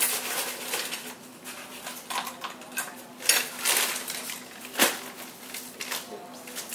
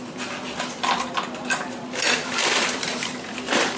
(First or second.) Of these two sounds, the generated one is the second